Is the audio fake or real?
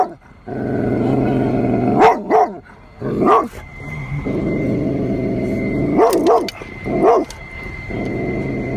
real